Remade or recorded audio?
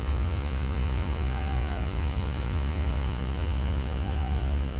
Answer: remade